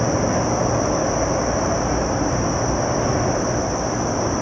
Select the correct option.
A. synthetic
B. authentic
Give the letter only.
B